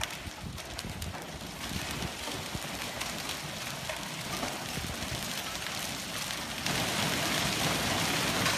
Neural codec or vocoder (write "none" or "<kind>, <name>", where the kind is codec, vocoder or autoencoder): none